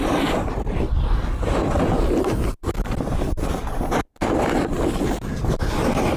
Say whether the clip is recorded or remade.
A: recorded